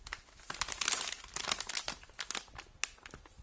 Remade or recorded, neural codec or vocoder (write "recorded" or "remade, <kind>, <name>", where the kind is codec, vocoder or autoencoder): recorded